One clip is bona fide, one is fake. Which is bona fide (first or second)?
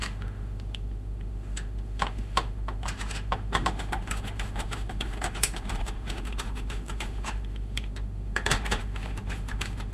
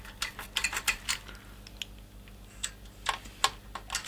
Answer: second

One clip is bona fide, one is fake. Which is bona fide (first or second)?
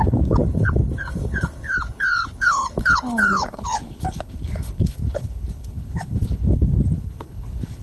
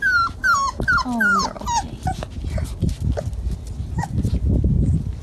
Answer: second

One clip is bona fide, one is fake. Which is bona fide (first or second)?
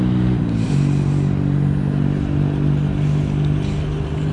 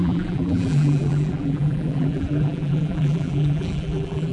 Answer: first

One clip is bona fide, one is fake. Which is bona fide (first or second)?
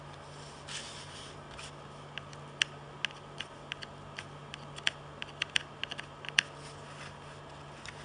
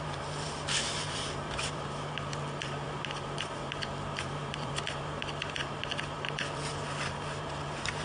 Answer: first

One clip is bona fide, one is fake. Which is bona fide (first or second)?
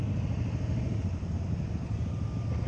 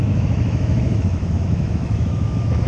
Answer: first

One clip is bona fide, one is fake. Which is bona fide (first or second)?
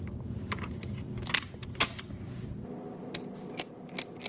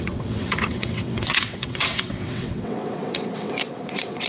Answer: first